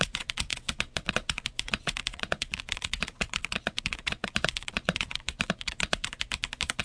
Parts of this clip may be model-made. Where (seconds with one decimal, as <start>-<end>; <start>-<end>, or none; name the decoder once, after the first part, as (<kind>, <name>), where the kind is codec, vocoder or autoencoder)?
0.0-6.1 (vocoder, WaveNeXt)